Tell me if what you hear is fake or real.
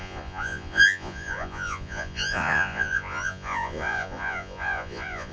fake